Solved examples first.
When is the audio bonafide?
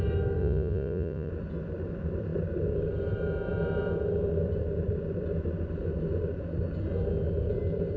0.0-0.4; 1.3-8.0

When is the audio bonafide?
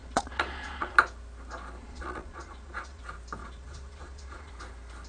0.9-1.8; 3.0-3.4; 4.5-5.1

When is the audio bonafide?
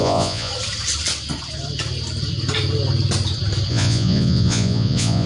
0.5-3.7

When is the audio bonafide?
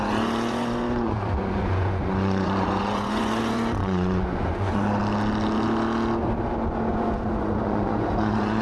5.0-6.9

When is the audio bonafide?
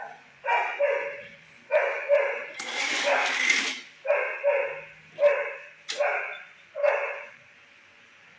3.2-6.2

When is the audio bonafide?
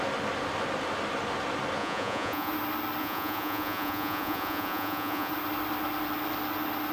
0.0-1.8; 2.5-3.0; 5.3-6.9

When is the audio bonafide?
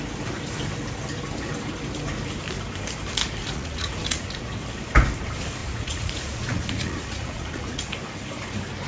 0.0-3.4; 4.5-5.6; 7.8-8.9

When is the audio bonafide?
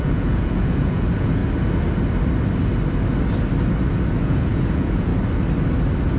1.4-4.2; 5.1-6.2